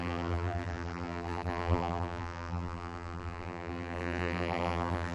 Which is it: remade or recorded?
remade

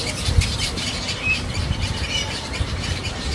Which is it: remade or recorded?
remade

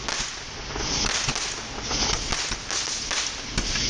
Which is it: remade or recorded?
recorded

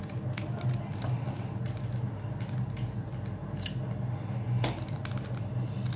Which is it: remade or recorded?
recorded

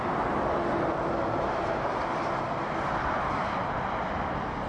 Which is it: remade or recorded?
recorded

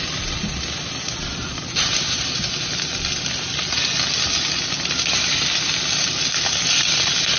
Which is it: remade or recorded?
recorded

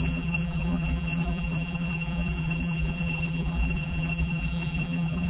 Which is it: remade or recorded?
remade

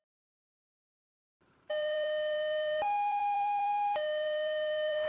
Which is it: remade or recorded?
remade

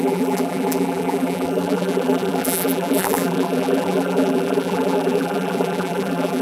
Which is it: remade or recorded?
remade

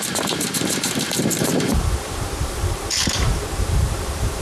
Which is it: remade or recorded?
remade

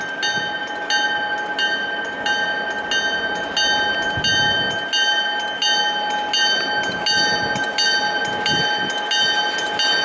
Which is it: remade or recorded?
recorded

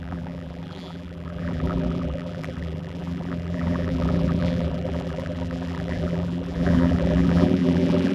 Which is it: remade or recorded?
remade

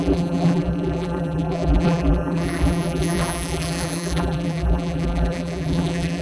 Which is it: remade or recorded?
remade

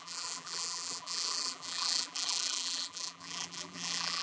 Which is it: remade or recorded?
remade